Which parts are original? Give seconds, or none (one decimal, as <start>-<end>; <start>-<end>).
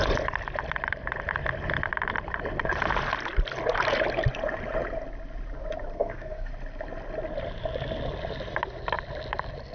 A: 0.0-5.9; 6.5-9.7